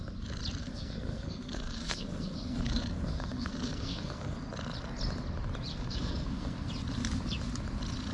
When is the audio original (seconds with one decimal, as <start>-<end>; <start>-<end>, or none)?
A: 0.0-0.6; 4.3-5.7; 6.7-8.1